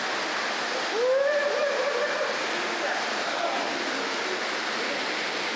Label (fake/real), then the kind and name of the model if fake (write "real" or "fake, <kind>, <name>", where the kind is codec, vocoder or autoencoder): real